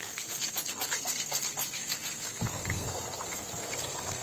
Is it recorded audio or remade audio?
remade